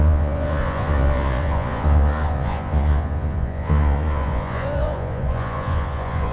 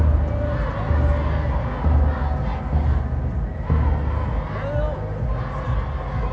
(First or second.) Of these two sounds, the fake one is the first